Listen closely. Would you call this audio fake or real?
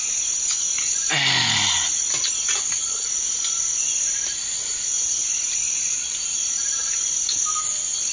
real